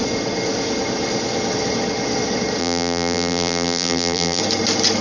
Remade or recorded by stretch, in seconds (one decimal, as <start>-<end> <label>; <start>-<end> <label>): 0.0-2.6 recorded; 2.6-4.4 remade; 4.4-5.0 recorded